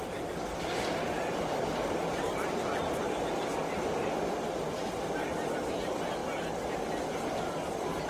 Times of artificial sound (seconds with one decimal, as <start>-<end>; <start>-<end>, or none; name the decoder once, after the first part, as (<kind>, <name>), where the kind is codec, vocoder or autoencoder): 4.0-4.6 (vocoder, BigVGAN v2); 5.2-5.7; 6.2-7.1